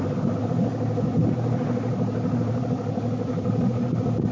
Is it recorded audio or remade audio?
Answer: recorded